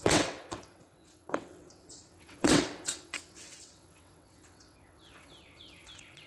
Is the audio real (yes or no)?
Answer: no